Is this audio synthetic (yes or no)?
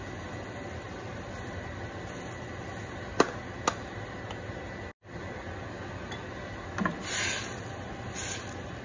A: no